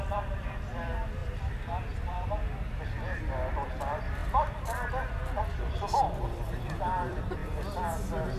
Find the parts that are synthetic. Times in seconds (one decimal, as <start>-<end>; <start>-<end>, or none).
0.0-4.2; 5.4-7.4